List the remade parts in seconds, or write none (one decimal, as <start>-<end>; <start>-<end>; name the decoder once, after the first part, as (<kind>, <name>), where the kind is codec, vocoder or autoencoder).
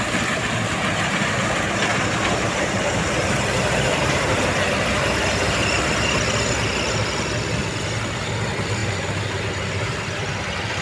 1.9-4.5 (vocoder, BigVGAN v2)